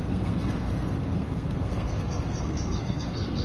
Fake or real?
fake